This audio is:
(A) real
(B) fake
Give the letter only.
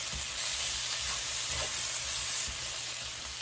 A